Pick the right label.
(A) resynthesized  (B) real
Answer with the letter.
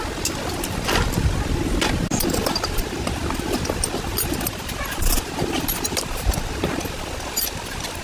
B